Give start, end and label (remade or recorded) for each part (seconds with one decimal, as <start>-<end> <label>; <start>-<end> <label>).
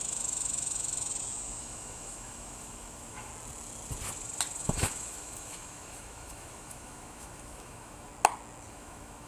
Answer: 0.0-1.1 remade; 1.1-1.6 recorded; 1.6-3.3 remade; 3.3-4.6 recorded; 4.6-8.1 remade; 8.1-8.7 recorded; 8.7-9.3 remade